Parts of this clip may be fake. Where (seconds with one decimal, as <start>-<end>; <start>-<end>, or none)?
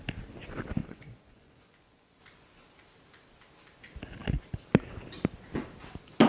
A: 0.8-2.2